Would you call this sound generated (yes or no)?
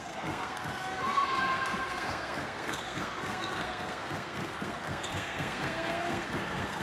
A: yes